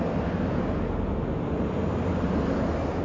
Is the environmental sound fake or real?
real